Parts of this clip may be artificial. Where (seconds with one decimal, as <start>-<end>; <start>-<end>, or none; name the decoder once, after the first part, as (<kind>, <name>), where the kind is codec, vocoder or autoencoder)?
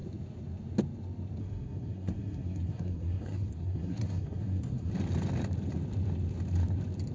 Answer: 1.4-4.9 (codec, SNAC)